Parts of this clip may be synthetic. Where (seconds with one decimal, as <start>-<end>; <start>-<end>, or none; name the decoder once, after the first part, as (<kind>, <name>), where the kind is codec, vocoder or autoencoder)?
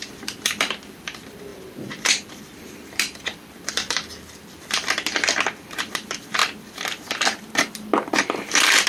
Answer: 0.0-6.4 (vocoder, BigVGAN v2); 7.7-8.9